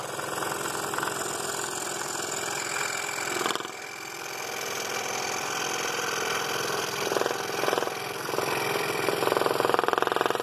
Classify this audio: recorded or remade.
remade